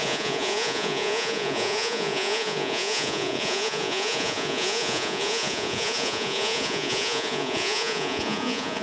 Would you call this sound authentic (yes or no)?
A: no